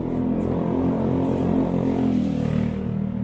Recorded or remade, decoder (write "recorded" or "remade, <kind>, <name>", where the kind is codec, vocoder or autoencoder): recorded